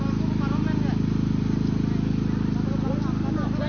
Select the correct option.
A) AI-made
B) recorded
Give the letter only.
B